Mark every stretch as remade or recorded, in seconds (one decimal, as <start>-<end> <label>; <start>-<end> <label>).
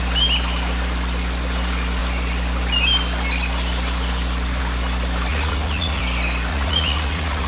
0.0-5.3 recorded; 5.3-6.0 remade; 6.0-6.5 recorded; 6.5-7.5 remade